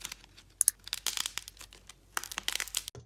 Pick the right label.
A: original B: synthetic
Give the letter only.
A